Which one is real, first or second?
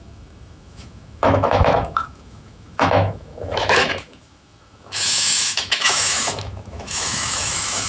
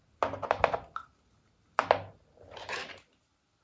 second